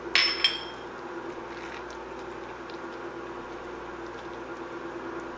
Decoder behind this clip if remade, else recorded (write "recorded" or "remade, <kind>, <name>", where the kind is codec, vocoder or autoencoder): recorded